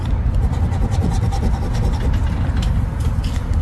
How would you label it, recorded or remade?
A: recorded